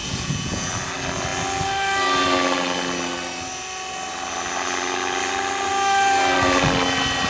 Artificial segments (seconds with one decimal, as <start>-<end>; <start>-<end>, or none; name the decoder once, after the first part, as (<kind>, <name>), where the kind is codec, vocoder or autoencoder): 0.0-0.7 (vocoder, Vocos)